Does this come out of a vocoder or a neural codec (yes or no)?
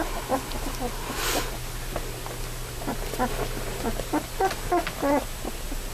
no